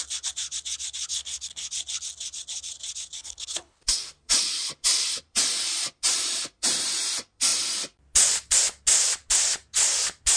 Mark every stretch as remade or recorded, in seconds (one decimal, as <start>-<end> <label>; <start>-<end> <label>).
0.0-1.1 recorded; 1.1-1.7 remade; 1.7-3.2 recorded; 3.2-3.8 remade; 3.8-10.4 recorded